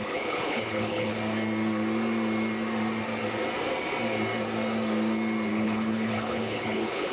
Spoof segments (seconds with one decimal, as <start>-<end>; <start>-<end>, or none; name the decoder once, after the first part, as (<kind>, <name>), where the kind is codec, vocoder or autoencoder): 0.0-1.2 (codec, HILCodec); 5.5-7.1